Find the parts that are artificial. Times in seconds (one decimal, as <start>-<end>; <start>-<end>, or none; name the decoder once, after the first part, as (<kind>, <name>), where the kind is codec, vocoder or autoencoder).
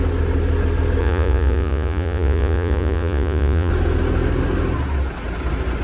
1.0-3.7 (vocoder, Vocos)